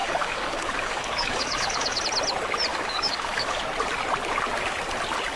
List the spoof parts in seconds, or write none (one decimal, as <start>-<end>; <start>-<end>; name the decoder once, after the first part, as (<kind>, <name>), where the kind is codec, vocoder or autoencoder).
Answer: 0.0-2.0 (codec, DAC); 2.7-3.6